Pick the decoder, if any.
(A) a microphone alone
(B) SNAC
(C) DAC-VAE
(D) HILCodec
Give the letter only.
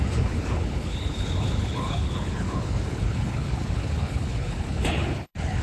D